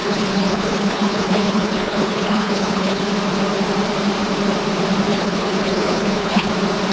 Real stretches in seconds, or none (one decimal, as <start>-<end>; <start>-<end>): 3.1-5.1; 6.5-6.9